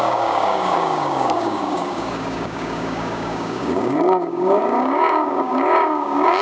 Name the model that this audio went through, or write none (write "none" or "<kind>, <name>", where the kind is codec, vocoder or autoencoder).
codec, DAC